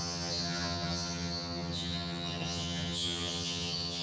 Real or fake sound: fake